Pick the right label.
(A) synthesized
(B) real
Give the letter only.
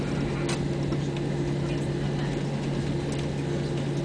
B